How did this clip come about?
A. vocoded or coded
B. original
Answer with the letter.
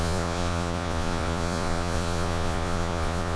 A